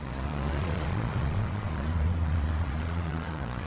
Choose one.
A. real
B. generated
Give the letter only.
B